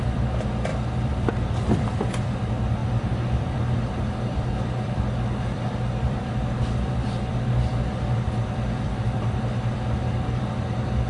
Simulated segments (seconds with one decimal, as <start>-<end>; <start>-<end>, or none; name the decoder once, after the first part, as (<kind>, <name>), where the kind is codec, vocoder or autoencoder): 0.0-11.1 (vocoder, BigVGAN v2)